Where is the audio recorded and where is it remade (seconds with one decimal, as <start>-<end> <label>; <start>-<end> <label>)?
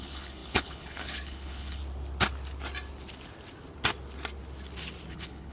0.0-1.8 remade; 1.8-5.1 recorded; 5.1-5.5 remade